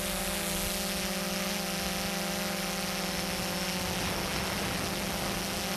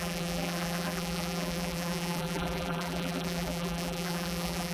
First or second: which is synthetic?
second